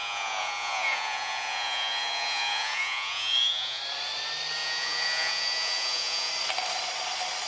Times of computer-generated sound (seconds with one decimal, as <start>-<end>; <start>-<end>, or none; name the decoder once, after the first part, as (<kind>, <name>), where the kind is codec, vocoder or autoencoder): 0.0-3.8 (vocoder, Vocos); 4.6-6.3